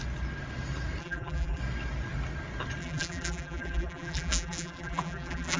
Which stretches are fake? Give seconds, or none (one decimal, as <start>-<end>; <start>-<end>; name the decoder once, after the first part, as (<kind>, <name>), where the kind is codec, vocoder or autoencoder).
1.0-1.6 (vocoder, BigVGAN v2); 2.8-5.6